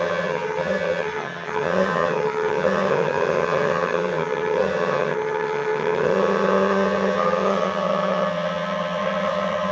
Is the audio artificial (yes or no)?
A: yes